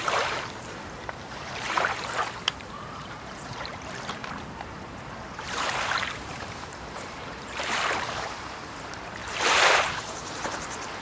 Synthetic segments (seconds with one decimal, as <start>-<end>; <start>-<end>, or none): 0.0-11.0